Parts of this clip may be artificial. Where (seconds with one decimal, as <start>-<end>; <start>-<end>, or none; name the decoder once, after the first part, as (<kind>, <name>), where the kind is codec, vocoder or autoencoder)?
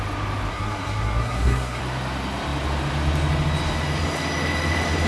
0.5-1.8 (codec, SNAC)